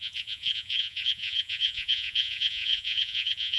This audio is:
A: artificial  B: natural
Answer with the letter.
A